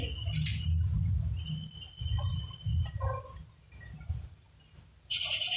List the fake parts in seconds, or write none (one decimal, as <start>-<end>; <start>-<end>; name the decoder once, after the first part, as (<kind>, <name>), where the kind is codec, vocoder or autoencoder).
0.0-5.6 (vocoder, BigVGAN v2)